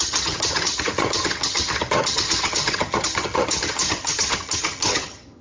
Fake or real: fake